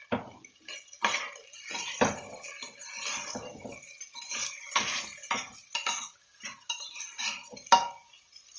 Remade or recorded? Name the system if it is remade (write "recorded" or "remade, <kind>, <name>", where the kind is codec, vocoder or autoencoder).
recorded